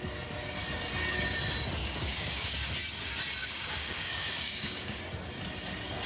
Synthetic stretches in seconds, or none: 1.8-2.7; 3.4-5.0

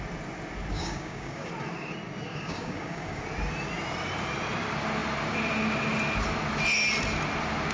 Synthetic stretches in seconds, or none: 0.7-1.5; 2.3-3.2